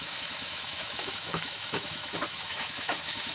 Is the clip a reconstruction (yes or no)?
yes